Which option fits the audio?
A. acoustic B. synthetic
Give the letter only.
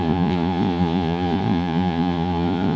B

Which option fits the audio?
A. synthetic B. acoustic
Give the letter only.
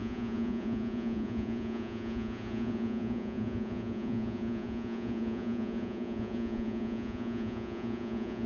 A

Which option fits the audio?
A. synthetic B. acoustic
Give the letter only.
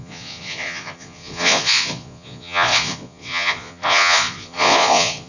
A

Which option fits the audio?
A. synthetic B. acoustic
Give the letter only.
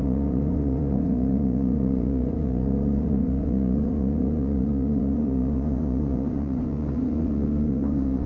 A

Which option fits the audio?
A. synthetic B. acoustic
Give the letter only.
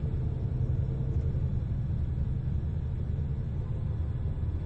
B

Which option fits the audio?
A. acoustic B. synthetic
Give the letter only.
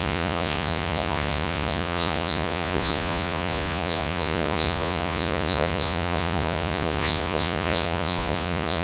B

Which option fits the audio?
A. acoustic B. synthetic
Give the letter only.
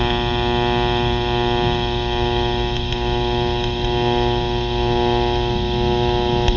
A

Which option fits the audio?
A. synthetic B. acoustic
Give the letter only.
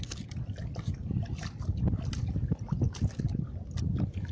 B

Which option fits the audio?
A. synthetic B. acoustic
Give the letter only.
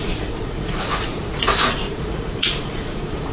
A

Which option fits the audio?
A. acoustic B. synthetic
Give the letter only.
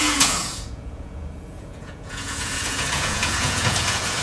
B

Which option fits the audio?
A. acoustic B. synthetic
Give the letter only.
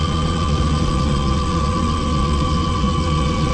B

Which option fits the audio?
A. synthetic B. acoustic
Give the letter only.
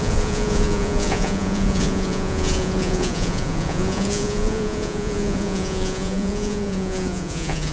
A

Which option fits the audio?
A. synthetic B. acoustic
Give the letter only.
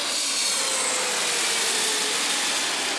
B